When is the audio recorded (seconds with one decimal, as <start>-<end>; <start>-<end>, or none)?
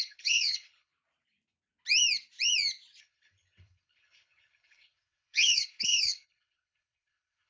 0.9-3.0